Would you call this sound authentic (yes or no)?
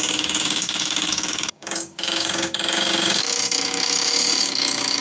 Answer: no